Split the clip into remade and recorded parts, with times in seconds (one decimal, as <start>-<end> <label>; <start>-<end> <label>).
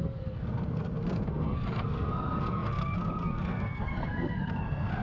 0.0-5.0 remade